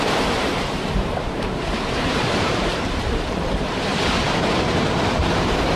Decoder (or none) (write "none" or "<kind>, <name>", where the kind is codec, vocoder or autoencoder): vocoder, BigVGAN v2